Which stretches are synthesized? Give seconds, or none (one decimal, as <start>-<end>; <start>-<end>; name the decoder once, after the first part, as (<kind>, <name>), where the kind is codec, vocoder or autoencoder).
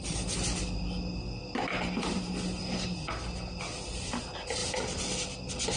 none